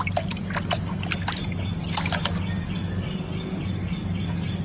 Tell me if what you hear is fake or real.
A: real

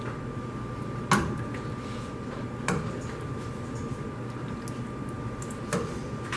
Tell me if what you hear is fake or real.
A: real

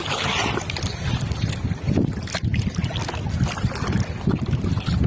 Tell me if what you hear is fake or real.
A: real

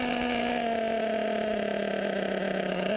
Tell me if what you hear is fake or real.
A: real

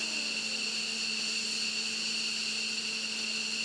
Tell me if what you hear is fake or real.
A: real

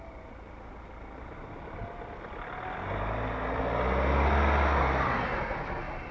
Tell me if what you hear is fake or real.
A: real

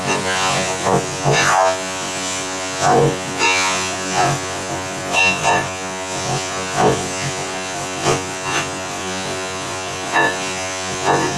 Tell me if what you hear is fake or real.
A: fake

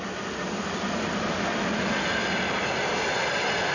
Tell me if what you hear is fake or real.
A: real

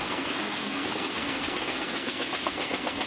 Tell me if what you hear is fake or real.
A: fake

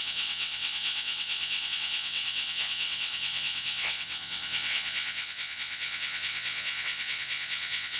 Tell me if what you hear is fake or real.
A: fake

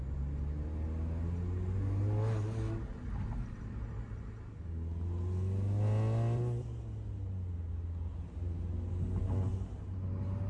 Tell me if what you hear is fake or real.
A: real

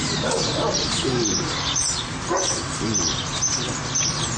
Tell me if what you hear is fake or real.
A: fake